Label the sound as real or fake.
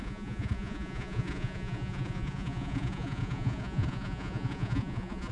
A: fake